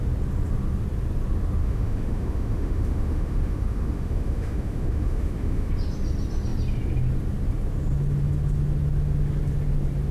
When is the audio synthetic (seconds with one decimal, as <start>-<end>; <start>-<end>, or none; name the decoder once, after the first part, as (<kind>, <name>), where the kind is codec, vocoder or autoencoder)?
1.6-5.7 (autoencoder, DAC-VAE)